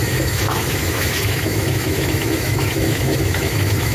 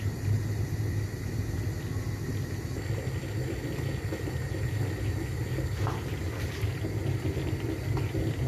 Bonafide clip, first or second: second